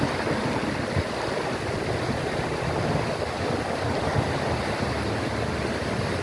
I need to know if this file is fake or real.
real